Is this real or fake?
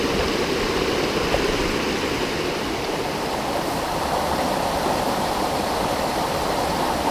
real